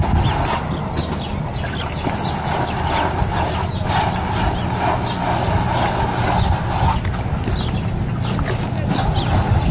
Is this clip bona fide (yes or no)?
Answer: yes